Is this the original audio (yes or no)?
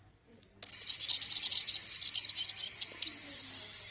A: yes